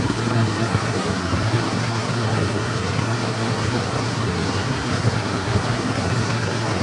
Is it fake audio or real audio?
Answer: fake